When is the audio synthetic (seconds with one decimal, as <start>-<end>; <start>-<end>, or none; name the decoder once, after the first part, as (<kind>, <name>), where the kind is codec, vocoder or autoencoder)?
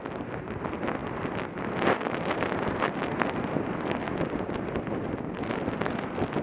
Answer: none